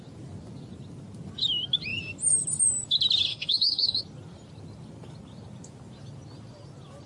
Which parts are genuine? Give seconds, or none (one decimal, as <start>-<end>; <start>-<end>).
0.0-3.3; 4.0-7.1